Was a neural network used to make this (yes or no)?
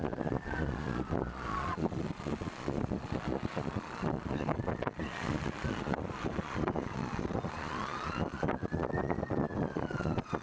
yes